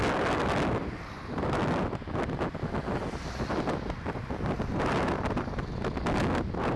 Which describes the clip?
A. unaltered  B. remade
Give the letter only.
A